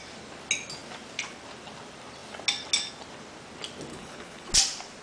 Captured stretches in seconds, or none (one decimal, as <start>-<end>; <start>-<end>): 0.0-3.9; 4.5-5.0